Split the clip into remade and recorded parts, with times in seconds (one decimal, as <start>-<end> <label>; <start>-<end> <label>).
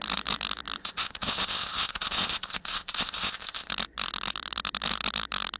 0.0-0.8 recorded; 0.8-3.7 remade; 3.7-5.6 recorded